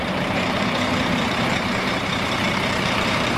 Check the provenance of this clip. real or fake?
fake